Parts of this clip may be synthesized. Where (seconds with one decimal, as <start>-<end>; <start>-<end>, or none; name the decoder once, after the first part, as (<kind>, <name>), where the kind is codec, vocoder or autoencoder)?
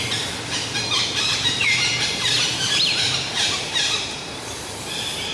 1.3-4.5 (vocoder, BigVGAN v2)